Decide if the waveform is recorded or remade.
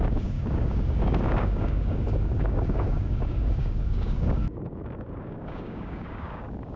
remade